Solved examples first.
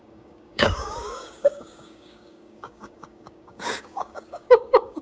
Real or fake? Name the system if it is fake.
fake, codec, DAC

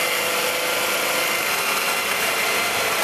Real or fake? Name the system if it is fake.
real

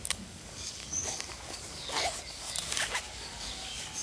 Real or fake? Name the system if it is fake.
fake, codec, DAC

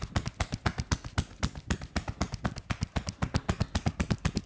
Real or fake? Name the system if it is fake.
real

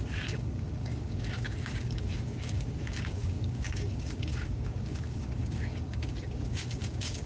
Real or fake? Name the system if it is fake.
fake, codec, DAC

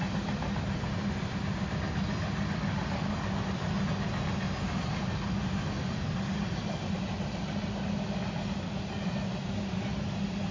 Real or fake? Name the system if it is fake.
real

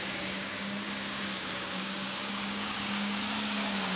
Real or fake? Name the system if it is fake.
fake, codec, DAC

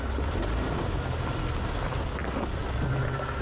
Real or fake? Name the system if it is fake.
real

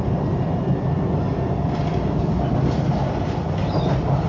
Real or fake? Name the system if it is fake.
real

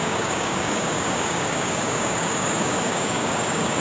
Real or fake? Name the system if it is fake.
fake, codec, DAC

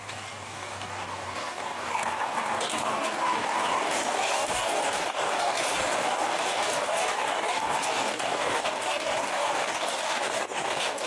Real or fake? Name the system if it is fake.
fake, codec, DAC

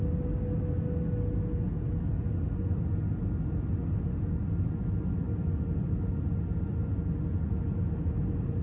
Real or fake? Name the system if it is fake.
real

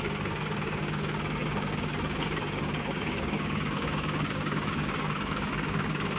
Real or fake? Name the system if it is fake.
fake, codec, DAC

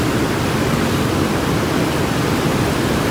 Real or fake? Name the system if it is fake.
real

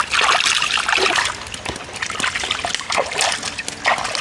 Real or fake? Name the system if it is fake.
real